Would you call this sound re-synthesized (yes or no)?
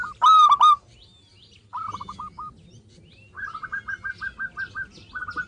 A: no